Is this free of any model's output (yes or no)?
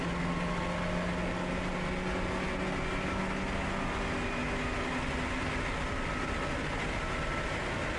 yes